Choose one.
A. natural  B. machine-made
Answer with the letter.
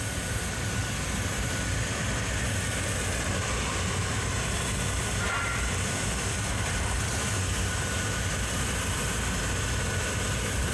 A